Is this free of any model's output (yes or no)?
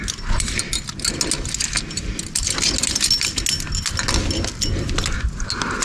yes